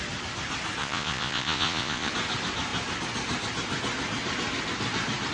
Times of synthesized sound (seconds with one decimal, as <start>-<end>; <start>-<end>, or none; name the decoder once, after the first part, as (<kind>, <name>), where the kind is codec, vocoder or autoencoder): 0.8-2.1 (vocoder, Vocos)